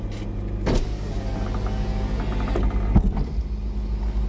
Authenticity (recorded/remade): recorded